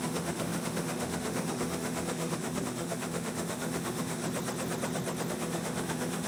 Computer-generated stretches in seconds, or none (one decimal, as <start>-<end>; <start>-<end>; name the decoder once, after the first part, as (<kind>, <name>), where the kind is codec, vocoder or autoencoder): 0.0-4.2 (autoencoder, DAC-VAE); 5.3-6.3